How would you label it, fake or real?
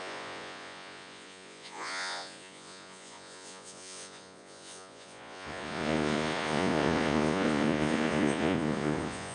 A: fake